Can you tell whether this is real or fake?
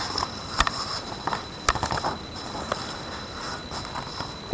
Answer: real